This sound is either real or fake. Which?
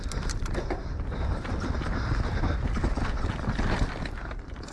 real